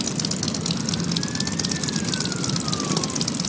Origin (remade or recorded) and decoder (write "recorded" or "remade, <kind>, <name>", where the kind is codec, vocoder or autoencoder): recorded